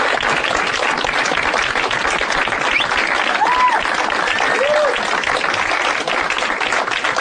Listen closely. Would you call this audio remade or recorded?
recorded